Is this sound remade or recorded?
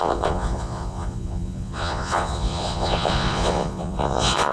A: remade